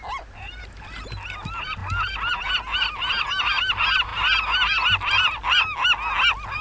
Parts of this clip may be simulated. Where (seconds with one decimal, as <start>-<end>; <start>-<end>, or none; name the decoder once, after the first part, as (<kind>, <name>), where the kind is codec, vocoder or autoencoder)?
none